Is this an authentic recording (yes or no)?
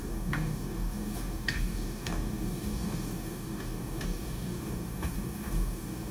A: no